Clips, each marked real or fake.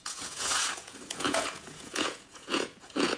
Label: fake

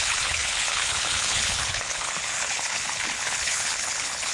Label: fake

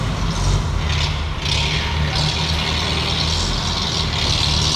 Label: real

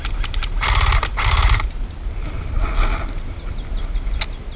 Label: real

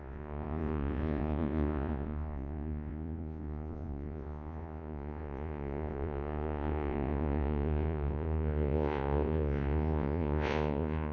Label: fake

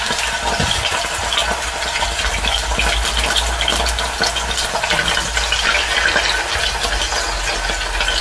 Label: real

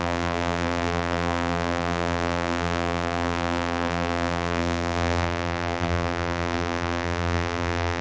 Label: fake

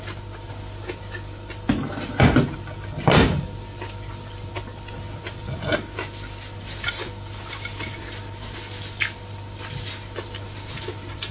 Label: real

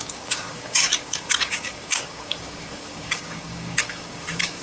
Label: fake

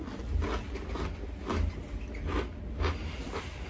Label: real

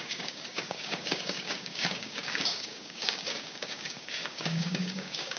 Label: fake